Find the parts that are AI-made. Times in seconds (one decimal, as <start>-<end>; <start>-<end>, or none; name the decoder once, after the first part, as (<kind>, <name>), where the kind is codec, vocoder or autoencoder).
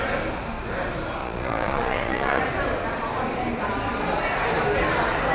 1.2-2.4 (vocoder, Vocos)